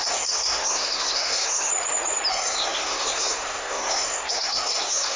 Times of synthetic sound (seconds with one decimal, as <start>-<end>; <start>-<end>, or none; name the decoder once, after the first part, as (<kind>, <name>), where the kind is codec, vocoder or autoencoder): 0.0-1.7 (codec, SNAC); 2.3-5.2